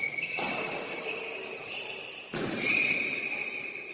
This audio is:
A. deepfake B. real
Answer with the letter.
B